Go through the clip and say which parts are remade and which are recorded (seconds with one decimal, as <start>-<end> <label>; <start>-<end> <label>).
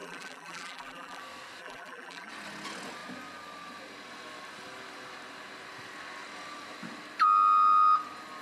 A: 0.0-1.2 remade; 1.2-1.6 recorded; 1.6-2.3 remade; 2.3-8.4 recorded